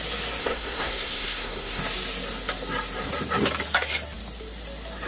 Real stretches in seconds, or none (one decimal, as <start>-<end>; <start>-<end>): 0.0-0.4; 1.8-5.1